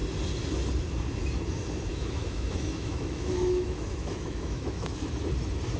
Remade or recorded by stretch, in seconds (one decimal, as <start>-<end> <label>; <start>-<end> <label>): 0.0-1.9 recorded; 1.9-5.1 remade; 5.1-5.8 recorded